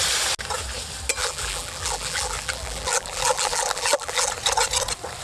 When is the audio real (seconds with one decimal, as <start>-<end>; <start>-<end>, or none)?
0.0-1.2; 4.3-5.2